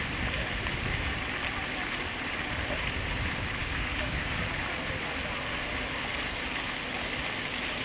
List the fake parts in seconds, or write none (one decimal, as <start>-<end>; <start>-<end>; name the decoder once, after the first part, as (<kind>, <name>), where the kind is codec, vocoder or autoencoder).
3.6-4.4 (codec, DAC)